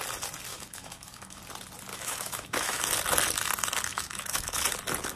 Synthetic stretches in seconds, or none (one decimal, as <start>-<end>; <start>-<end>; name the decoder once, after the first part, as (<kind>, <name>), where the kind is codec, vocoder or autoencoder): 0.5-1.4 (autoencoder, DAC-VAE); 1.9-2.8; 3.9-4.6